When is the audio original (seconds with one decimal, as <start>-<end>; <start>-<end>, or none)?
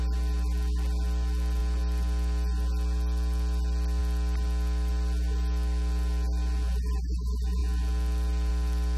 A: 0.0-9.0